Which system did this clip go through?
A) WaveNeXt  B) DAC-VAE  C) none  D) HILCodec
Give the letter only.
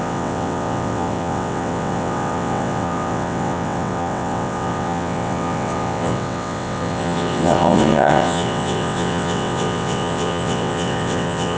A